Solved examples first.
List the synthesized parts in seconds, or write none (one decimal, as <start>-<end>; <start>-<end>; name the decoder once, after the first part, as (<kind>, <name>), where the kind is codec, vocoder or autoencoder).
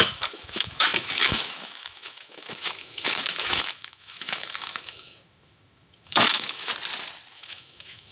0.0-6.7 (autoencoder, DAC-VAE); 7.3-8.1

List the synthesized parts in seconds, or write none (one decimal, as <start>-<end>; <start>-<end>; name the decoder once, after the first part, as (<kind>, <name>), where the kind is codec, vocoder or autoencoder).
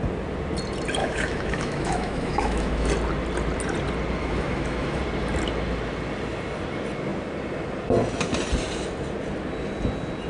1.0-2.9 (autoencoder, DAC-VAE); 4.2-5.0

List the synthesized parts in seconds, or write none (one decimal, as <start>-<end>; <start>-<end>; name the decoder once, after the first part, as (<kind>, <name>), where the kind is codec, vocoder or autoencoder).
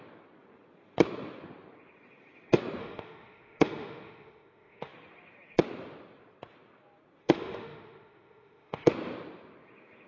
2.8-4.9 (autoencoder, DAC-VAE); 7.2-8.9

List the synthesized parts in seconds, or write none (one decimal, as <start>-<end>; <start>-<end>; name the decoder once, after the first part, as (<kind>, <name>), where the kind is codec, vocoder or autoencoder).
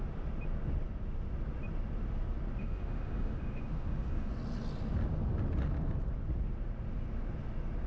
2.6-4.3 (autoencoder, DAC-VAE)